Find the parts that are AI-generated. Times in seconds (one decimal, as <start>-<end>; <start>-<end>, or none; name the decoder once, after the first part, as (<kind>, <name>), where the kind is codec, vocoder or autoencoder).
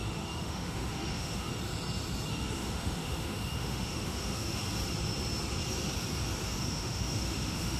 0.0-1.5 (autoencoder, DAC-VAE); 2.3-4.6; 6.6-7.8